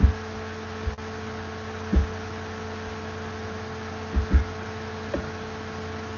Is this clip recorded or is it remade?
recorded